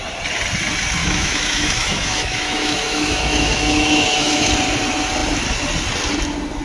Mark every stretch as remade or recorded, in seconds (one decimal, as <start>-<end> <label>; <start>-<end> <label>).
0.0-1.0 recorded; 1.0-4.5 remade; 4.5-6.6 recorded